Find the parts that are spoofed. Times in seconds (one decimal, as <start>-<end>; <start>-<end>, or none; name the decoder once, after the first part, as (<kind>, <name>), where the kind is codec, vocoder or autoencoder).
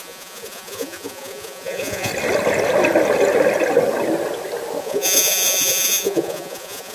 0.0-2.1 (vocoder, Vocos); 4.8-6.9